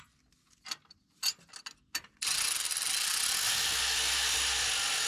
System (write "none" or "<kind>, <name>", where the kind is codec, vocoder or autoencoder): none